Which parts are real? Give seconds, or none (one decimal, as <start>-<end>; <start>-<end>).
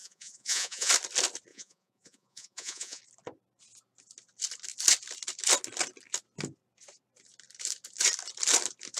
0.9-1.5; 3.0-9.0